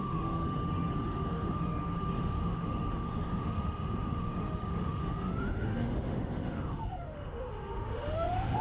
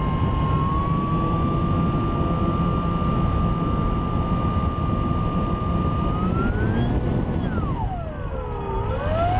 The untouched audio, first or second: second